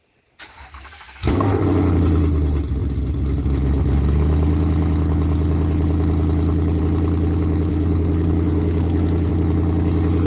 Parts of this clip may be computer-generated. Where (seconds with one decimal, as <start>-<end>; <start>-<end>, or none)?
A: 0.5-1.6; 7.7-9.3